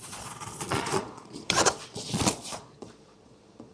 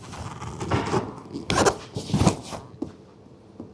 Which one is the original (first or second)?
second